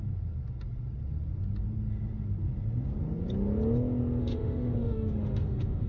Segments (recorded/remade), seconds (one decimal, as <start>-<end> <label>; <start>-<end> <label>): 0.0-4.2 recorded; 4.2-5.9 remade